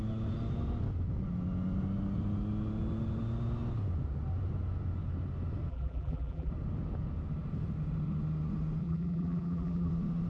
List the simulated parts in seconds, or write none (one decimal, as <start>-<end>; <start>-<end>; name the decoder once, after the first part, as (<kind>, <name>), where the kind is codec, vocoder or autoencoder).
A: 5.7-6.5 (vocoder, BigVGAN v2); 8.8-9.9